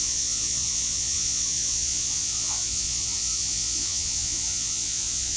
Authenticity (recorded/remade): remade